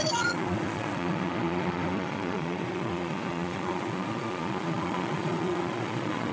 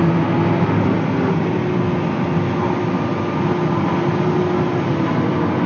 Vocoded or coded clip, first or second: first